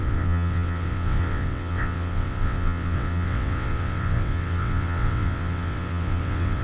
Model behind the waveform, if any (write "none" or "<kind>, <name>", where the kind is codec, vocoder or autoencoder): vocoder, WaveNeXt